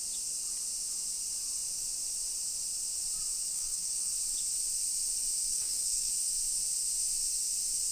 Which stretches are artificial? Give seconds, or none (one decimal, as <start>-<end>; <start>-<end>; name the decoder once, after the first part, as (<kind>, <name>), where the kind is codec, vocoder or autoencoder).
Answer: 3.5-4.1 (codec, SNAC); 5.5-6.1